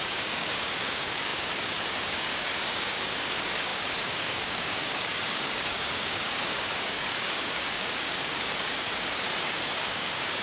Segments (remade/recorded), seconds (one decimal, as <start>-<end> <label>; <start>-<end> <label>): 0.0-10.4 remade